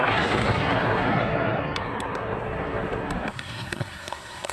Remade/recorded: remade